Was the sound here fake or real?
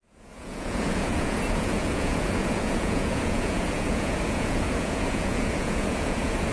fake